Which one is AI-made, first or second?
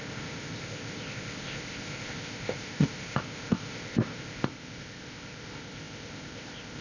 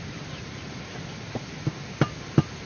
first